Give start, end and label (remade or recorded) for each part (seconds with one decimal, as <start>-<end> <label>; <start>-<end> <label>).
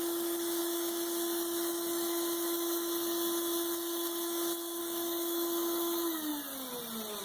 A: 0.0-6.3 remade; 6.3-7.2 recorded